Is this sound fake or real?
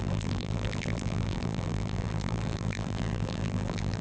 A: fake